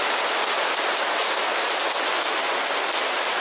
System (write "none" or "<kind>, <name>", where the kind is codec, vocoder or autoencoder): none